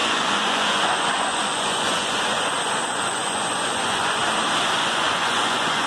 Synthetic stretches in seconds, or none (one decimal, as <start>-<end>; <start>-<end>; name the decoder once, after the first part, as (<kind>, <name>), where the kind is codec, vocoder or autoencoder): 0.0-4.2 (vocoder, Vocos); 4.7-5.9